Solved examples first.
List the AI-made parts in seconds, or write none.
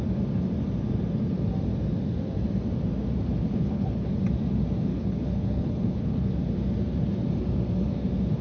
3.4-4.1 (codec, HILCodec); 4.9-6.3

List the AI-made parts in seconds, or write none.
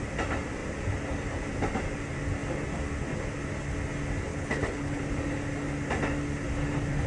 4.3-5.0 (codec, HILCodec)